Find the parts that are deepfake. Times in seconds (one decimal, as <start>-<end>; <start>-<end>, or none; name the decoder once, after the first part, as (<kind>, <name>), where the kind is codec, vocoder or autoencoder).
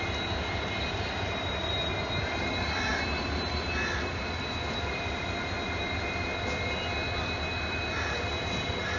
none